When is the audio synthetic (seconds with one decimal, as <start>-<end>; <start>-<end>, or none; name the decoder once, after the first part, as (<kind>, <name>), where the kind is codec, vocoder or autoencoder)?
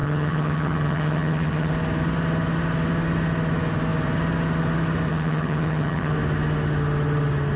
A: 0.0-1.7 (vocoder, HiFi-GAN); 5.1-6.1